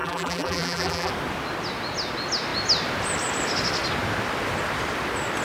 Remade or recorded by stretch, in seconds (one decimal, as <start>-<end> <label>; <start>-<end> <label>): 0.0-1.1 remade; 1.1-5.4 recorded